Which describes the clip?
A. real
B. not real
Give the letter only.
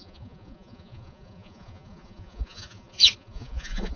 B